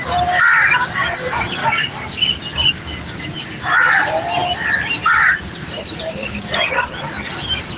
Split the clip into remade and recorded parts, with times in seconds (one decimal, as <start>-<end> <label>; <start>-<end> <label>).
0.0-1.6 recorded; 1.6-2.4 remade; 2.4-7.8 recorded